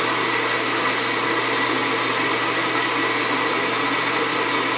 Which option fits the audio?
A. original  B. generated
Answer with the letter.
A